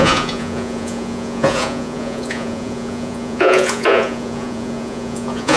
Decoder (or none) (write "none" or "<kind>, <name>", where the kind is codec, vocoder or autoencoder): vocoder, Vocos